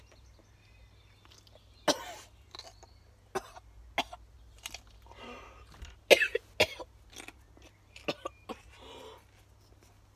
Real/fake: real